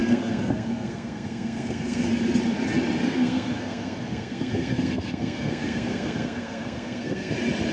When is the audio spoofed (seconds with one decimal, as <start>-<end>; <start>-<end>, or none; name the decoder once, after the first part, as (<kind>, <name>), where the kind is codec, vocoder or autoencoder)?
0.0-2.1 (codec, SNAC); 3.0-7.3